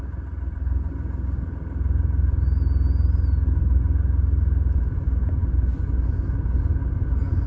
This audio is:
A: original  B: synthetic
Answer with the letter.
A